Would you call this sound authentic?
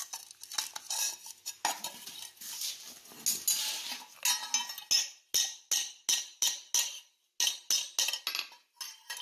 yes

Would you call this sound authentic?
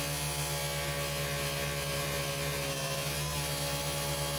yes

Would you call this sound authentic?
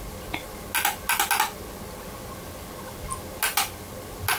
yes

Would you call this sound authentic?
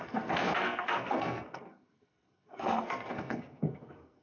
no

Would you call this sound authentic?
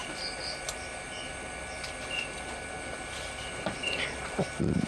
yes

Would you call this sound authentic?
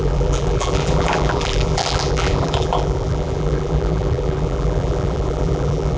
no